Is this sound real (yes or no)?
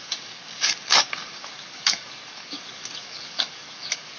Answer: no